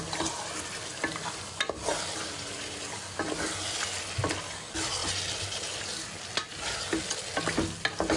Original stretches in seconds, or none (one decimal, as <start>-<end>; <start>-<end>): 0.0-8.2